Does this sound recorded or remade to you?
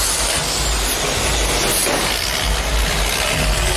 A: recorded